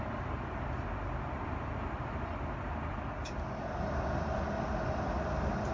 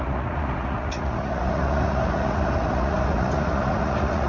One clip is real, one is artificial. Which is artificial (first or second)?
second